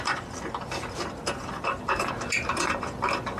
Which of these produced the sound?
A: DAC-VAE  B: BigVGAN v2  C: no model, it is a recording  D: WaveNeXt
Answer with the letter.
B